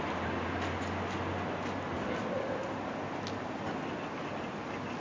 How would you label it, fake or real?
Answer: real